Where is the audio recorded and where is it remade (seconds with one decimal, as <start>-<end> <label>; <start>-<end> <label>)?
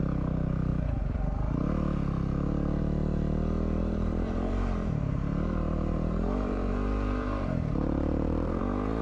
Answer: 0.0-3.8 recorded; 3.8-8.6 remade; 8.6-9.0 recorded